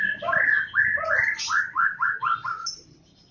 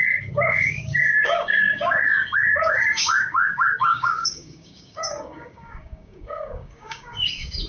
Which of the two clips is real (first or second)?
first